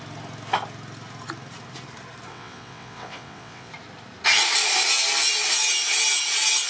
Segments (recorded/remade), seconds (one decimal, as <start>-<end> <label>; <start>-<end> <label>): 0.0-2.3 recorded; 2.3-3.7 remade; 3.7-6.7 recorded